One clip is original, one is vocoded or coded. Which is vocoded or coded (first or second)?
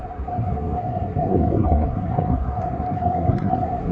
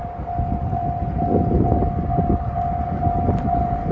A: first